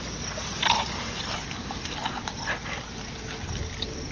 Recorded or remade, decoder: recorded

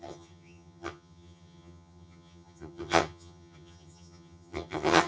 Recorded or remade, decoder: remade, vocoder, HiFi-GAN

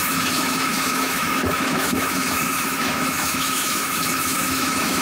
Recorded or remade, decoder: remade, autoencoder, DAC-VAE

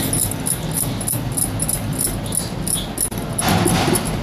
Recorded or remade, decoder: recorded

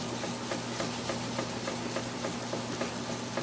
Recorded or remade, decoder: recorded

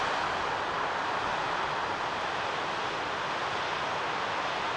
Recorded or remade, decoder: recorded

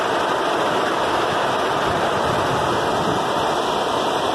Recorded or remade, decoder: recorded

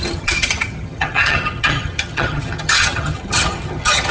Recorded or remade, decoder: remade, vocoder, HiFi-GAN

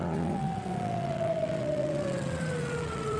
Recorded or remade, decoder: remade, vocoder, WaveNeXt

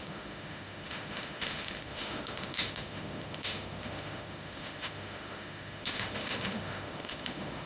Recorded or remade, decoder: remade, autoencoder, DAC-VAE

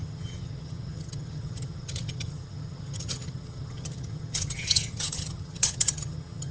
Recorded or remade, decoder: remade, vocoder, HiFi-GAN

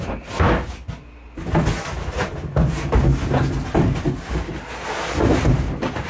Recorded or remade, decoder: recorded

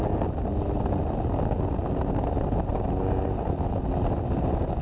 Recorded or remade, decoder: recorded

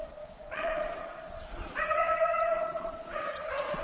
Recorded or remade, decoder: remade, vocoder, Vocos